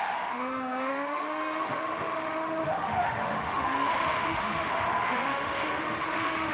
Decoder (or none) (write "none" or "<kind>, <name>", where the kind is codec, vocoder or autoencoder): autoencoder, DAC-VAE